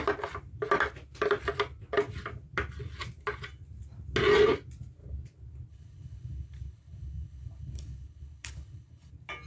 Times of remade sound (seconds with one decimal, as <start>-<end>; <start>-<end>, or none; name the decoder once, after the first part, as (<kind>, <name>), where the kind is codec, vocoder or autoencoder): 5.7-9.1 (codec, HILCodec)